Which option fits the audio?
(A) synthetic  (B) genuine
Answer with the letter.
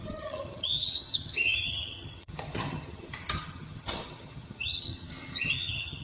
A